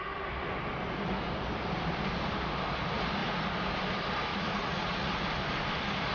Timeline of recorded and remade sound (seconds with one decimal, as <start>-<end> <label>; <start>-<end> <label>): 0.0-4.3 recorded; 4.3-5.2 remade; 5.2-6.1 recorded